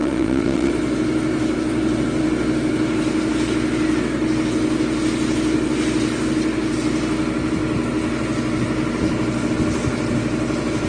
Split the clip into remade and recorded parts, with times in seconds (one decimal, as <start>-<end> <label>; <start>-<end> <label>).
0.0-0.7 remade; 0.7-10.9 recorded